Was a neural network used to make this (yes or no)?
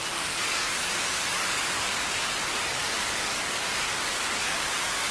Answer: yes